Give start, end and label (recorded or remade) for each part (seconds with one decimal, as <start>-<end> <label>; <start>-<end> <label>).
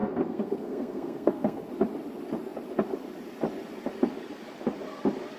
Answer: 0.0-1.7 remade; 1.7-5.4 recorded